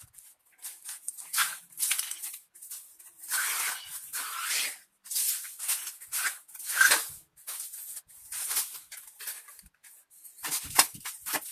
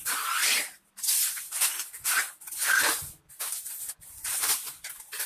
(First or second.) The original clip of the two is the first